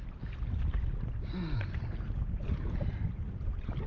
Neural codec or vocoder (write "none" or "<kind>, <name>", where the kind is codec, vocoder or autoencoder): none